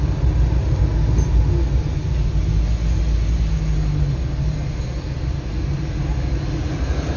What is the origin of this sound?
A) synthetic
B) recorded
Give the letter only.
B